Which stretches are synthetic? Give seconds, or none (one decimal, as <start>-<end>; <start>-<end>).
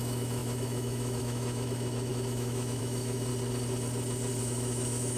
0.0-3.3; 4.4-5.2